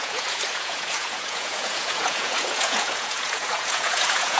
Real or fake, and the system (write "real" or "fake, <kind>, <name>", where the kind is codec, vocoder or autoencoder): fake, vocoder, Vocos